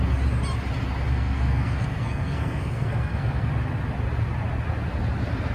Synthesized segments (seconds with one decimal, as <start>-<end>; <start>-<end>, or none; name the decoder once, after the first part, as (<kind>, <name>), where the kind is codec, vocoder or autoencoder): 1.1-3.5 (codec, SNAC)